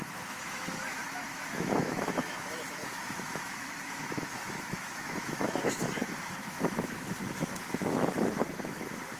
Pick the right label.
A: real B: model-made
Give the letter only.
B